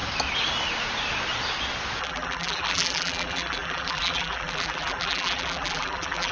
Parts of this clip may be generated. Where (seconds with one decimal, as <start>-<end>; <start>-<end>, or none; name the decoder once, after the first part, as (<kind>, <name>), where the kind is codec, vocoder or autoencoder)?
2.0-6.3 (vocoder, BigVGAN v2)